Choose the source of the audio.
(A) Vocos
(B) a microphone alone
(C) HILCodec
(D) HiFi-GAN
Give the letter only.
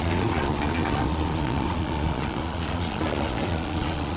A